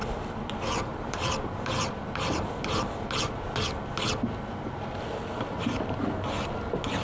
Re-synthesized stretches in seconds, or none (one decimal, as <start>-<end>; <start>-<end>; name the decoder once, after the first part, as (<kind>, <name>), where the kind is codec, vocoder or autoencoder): 0.9-2.6 (vocoder, BigVGAN v2)